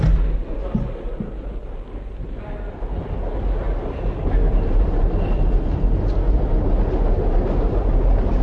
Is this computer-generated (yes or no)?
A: no